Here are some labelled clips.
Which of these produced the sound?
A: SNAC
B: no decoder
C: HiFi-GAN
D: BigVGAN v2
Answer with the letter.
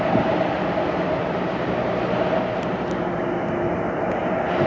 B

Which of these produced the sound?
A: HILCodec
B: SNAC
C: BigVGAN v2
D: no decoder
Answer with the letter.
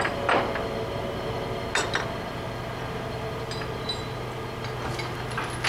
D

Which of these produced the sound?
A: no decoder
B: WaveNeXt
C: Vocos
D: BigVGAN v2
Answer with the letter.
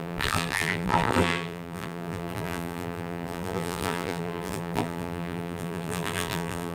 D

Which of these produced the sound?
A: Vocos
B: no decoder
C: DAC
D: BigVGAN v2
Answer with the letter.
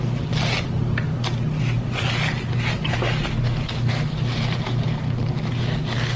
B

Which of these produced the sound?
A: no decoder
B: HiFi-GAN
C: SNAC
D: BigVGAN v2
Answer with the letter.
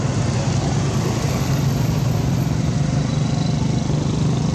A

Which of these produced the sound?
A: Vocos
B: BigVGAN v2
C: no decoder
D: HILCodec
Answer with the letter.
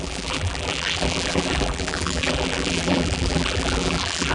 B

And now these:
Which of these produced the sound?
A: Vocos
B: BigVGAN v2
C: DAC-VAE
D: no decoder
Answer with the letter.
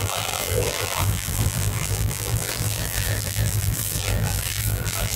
B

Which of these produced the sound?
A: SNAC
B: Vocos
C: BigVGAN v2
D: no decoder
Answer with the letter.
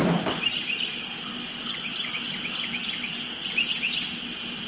D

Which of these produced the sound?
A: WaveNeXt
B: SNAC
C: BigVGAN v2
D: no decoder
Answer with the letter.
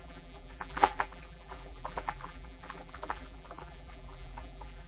C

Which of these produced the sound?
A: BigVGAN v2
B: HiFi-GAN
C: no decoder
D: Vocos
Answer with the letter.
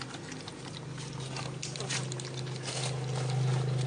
C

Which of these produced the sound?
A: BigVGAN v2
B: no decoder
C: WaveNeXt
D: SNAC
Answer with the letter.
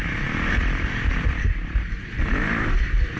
A